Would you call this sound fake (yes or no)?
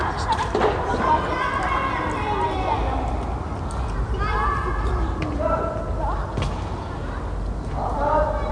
no